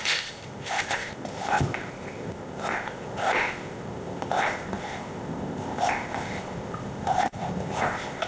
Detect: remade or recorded remade